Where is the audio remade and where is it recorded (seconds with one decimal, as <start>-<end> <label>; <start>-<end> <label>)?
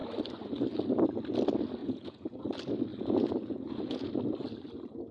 0.0-1.8 recorded; 1.8-2.4 remade; 2.4-2.9 recorded; 2.9-4.1 remade; 4.1-5.1 recorded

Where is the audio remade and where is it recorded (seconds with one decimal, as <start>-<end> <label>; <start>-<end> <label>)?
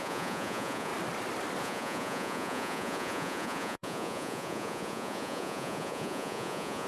0.0-0.9 remade; 0.9-1.6 recorded; 1.6-6.9 remade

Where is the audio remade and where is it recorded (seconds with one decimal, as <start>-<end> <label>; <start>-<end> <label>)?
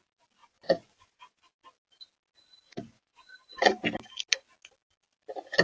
0.0-0.4 recorded; 0.4-1.4 remade; 1.4-2.7 recorded; 2.7-3.8 remade; 3.8-5.6 recorded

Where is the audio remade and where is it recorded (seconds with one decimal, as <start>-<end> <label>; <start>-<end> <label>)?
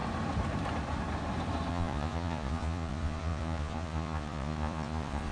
0.0-1.7 recorded; 1.7-5.3 remade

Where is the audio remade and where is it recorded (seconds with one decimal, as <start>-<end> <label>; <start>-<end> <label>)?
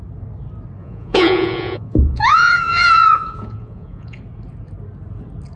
0.0-0.8 recorded; 0.8-4.2 remade; 4.2-5.6 recorded